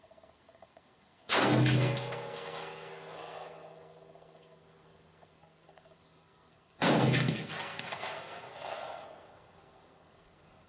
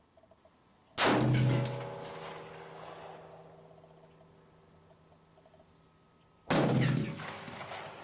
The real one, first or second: second